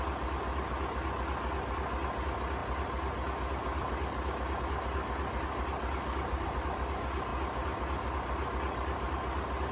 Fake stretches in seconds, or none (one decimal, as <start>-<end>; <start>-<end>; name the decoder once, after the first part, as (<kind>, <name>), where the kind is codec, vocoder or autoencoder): none